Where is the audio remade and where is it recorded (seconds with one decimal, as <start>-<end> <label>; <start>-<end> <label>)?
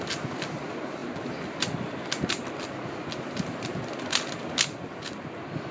0.0-5.7 recorded